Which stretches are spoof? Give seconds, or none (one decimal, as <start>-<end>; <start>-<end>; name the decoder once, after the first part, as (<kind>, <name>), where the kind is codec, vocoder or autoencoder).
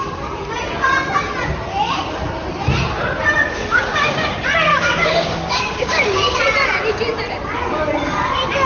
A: 3.7-4.3 (codec, DAC); 4.7-6.4